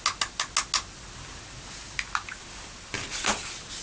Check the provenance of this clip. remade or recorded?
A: recorded